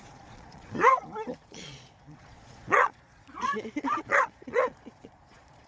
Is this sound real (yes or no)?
no